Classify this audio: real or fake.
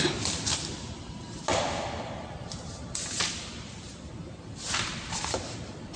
real